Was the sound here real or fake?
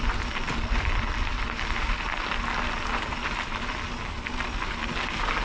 real